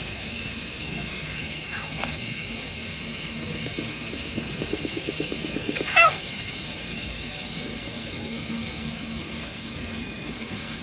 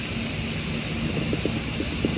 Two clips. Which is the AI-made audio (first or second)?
first